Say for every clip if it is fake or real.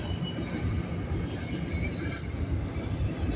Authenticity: real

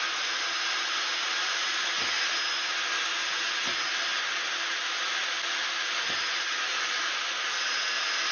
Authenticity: real